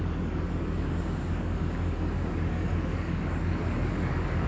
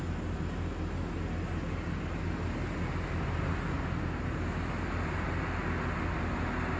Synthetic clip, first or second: first